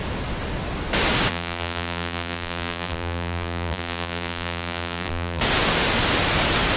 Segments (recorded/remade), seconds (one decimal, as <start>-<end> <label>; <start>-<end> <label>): 0.0-1.3 recorded; 1.3-5.4 remade; 5.4-6.8 recorded